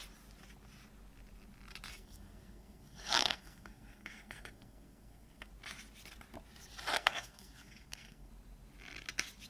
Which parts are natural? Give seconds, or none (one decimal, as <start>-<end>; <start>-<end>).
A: 0.0-1.9; 5.5-6.9; 8.3-9.5